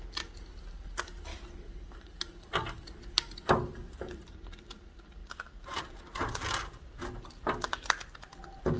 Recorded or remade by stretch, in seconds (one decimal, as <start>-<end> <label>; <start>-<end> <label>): 0.0-1.3 recorded; 1.3-2.1 remade; 2.1-5.2 recorded; 5.2-5.8 remade; 5.8-8.8 recorded